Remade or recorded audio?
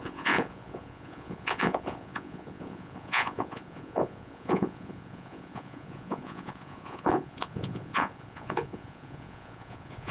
remade